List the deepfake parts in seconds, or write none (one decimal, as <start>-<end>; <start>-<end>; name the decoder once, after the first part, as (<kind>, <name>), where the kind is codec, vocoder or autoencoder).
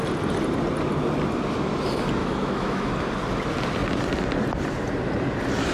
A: 2.2-2.9 (autoencoder, DAC-VAE)